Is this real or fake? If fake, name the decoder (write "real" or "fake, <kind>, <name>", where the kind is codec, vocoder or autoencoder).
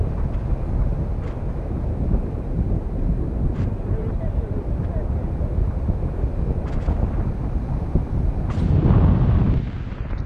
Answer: real